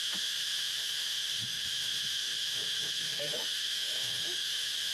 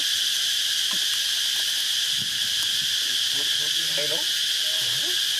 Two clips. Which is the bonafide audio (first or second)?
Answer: second